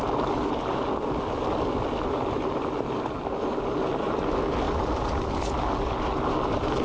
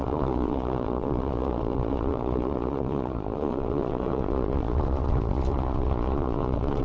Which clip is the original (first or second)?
first